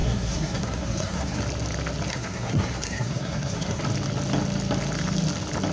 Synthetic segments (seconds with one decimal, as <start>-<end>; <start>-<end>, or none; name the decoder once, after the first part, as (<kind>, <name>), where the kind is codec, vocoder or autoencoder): 0.0-1.4 (codec, SNAC); 2.1-3.8